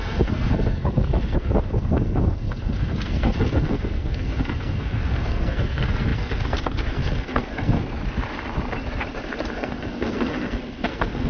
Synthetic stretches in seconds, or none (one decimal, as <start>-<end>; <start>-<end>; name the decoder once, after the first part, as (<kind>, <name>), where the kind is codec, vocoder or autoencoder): 0.0-8.0 (codec, SNAC); 9.5-11.3